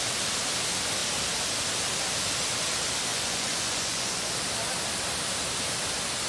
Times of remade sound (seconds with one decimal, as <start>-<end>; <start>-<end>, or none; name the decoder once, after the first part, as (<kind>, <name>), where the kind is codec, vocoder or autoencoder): 3.1-4.3 (vocoder, Vocos)